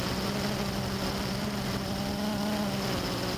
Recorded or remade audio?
recorded